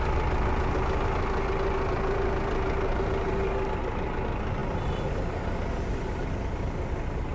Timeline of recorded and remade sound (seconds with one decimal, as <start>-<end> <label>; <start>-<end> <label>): 0.0-7.3 recorded